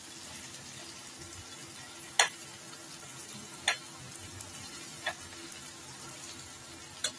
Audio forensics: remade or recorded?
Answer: recorded